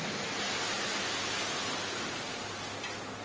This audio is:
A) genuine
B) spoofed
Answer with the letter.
A